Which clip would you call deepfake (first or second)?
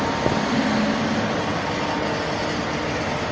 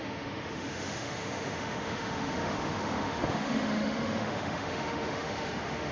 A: second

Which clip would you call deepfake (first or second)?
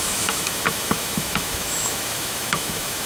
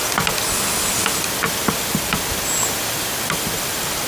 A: first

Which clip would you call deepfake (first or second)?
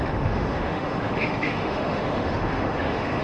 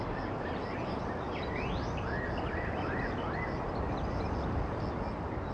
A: first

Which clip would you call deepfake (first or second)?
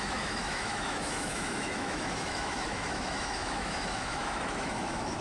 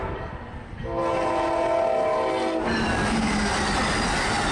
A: first